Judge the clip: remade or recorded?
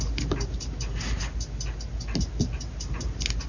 recorded